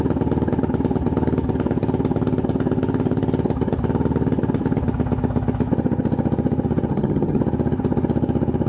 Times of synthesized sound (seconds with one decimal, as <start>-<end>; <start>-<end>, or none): 6.9-7.4